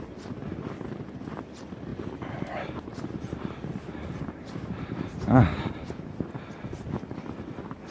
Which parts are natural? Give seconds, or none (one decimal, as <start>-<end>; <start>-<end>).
0.0-1.9; 6.0-7.9